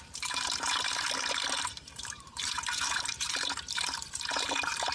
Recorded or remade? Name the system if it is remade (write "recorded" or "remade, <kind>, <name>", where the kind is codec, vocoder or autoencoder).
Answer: remade, vocoder, BigVGAN v2